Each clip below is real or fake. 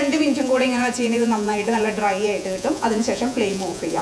fake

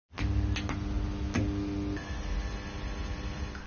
real